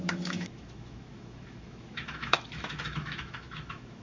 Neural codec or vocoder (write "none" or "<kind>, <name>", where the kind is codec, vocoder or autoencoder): autoencoder, DAC-VAE